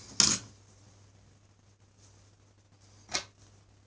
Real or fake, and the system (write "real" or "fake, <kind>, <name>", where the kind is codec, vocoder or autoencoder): real